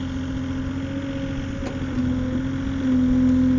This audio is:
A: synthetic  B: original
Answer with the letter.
B